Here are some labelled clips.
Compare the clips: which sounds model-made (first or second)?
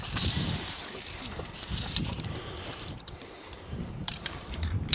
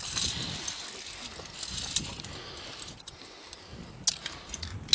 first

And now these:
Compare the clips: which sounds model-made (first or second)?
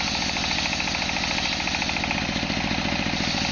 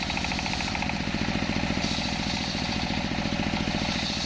second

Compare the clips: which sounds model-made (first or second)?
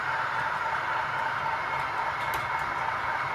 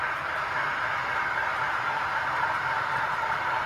second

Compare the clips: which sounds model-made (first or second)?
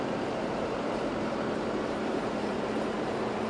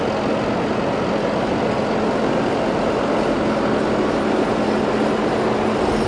first